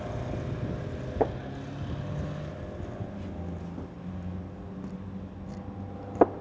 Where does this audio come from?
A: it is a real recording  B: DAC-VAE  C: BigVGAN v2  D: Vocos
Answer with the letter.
A